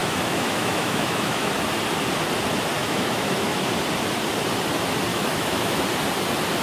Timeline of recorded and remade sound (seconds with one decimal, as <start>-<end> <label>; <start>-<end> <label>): 0.0-1.5 remade; 1.5-2.8 recorded; 2.8-3.7 remade; 3.7-5.1 recorded; 5.1-5.8 remade; 5.8-6.6 recorded

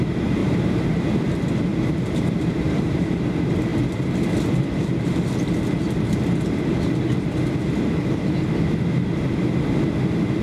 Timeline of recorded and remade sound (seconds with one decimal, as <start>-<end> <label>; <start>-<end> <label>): 0.0-0.4 recorded; 0.4-1.0 remade; 1.0-1.7 recorded; 1.7-3.2 remade; 3.2-10.4 recorded

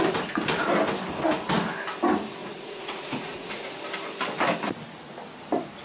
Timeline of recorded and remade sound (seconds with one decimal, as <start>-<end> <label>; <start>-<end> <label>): 0.0-2.4 recorded; 2.4-3.8 remade; 3.8-5.8 recorded

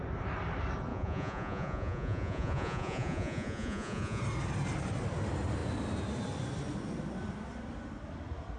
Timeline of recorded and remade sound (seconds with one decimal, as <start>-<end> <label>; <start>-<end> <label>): 0.0-0.9 recorded; 0.9-4.2 remade; 4.2-8.6 recorded

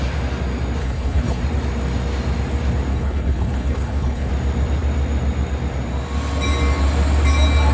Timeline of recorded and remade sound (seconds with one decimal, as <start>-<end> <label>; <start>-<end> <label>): 0.0-0.8 recorded; 0.8-1.4 remade; 1.4-2.9 recorded; 2.9-4.3 remade; 4.3-7.7 recorded

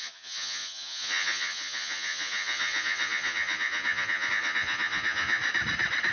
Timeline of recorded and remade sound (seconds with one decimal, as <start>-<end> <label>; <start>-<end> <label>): 0.0-5.4 remade; 5.4-6.1 recorded

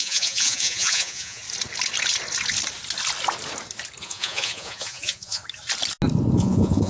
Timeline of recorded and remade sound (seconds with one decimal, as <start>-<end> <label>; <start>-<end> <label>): 0.0-1.4 remade; 1.4-4.0 recorded; 4.0-5.4 remade; 5.4-6.4 recorded; 6.4-6.9 remade

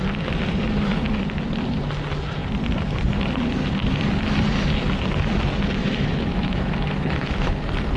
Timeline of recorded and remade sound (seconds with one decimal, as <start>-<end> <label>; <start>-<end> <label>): 0.0-5.8 recorded; 5.8-7.5 remade; 7.5-8.0 recorded